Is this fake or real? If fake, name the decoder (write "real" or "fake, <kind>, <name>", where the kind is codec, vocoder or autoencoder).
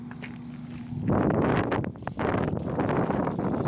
real